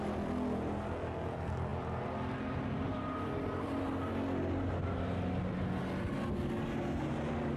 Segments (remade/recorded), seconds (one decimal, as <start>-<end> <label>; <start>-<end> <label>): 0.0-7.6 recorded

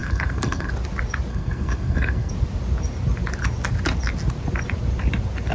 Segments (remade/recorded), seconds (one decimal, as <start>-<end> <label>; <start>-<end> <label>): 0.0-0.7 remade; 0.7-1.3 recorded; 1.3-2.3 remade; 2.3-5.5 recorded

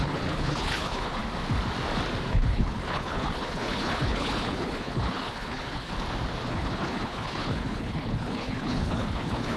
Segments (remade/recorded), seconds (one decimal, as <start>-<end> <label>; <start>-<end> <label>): 0.0-1.2 remade; 1.2-2.3 recorded; 2.3-5.9 remade; 5.9-6.5 recorded; 6.5-9.6 remade

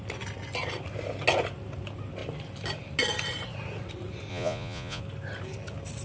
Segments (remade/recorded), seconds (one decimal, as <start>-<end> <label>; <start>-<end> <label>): 0.0-4.3 recorded; 4.3-5.0 remade; 5.0-6.0 recorded

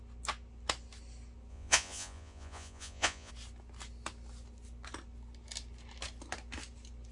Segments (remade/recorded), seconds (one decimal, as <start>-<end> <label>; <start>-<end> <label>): 0.0-1.5 recorded; 1.5-3.3 remade; 3.3-7.1 recorded

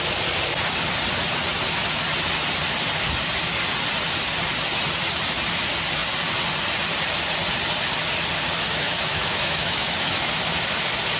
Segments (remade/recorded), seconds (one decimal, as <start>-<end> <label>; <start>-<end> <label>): 0.0-8.7 recorded; 8.7-10.3 remade; 10.3-11.2 recorded

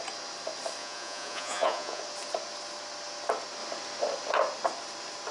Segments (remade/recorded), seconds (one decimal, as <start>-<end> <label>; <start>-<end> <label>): 0.0-0.8 recorded; 0.8-2.0 remade; 2.0-5.3 recorded

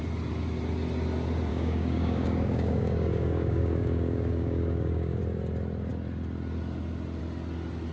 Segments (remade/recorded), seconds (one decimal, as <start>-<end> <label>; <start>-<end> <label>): 0.0-1.5 recorded; 1.5-5.2 remade; 5.2-7.9 recorded